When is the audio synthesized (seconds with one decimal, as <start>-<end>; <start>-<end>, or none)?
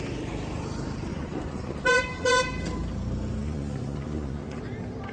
1.1-2.4; 3.4-4.6